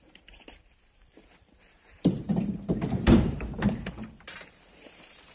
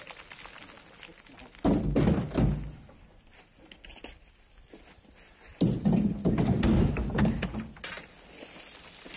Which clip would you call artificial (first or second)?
first